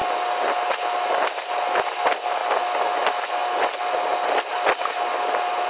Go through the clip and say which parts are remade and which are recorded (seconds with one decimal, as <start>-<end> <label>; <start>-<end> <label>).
0.0-5.7 recorded